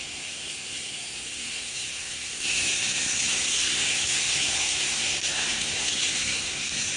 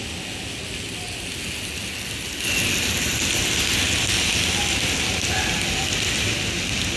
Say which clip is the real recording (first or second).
second